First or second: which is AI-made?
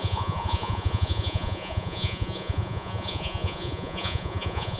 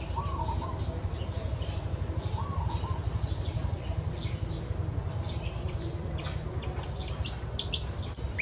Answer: first